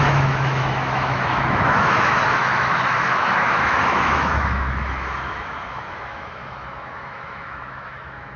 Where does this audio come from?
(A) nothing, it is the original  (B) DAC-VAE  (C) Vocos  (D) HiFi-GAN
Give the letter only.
B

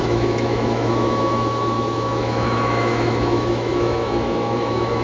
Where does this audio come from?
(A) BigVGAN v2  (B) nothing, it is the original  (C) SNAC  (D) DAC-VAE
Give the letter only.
D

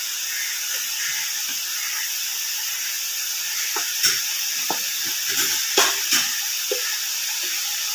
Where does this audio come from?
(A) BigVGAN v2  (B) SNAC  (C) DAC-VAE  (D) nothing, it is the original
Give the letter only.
D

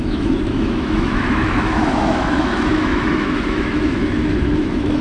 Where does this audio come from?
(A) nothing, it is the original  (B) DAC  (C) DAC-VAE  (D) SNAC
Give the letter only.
C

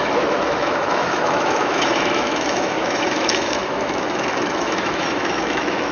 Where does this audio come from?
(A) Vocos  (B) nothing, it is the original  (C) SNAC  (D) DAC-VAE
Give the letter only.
D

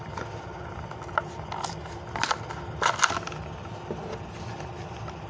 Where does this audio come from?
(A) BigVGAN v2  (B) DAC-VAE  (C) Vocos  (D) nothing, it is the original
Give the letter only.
D